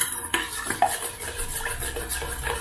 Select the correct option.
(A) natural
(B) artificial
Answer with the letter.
A